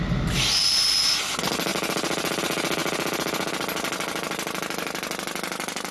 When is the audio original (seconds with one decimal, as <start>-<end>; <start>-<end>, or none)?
0.0-5.9